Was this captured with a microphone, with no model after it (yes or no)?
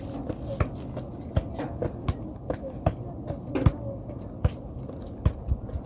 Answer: yes